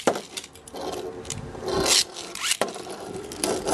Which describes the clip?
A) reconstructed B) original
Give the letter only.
B